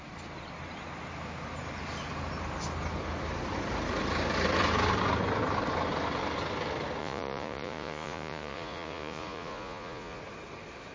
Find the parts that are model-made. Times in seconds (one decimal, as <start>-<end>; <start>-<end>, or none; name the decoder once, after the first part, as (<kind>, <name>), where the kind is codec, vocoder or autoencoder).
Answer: 7.0-10.2 (vocoder, Vocos)